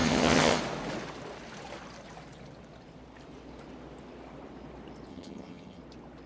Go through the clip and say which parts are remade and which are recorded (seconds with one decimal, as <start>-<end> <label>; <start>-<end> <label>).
0.0-0.6 remade; 0.6-5.1 recorded; 5.1-5.8 remade; 5.8-6.3 recorded